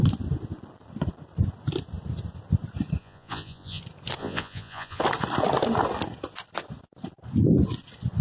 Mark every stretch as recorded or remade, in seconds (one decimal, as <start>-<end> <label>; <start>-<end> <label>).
0.0-3.0 recorded; 3.0-3.8 remade; 3.8-4.2 recorded; 4.2-5.0 remade; 5.0-8.2 recorded